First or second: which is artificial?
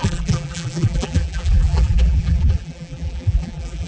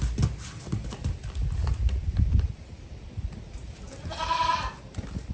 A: first